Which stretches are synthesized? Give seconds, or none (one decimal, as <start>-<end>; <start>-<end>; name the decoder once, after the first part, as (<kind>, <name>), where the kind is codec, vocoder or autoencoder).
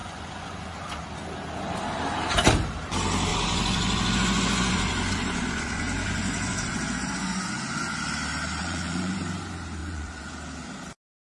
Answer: 0.0-1.0 (vocoder, Vocos); 3.3-8.0; 8.6-9.2; 9.8-10.3